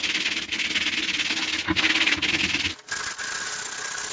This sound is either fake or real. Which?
real